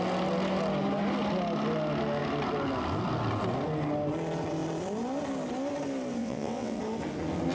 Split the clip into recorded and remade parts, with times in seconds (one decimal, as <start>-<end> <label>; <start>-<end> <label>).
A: 0.0-6.2 recorded; 6.2-6.8 remade; 6.8-7.5 recorded